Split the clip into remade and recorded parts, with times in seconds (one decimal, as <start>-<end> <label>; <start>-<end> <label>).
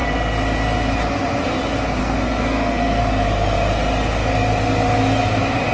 0.0-2.0 recorded; 2.0-3.0 remade; 3.0-5.7 recorded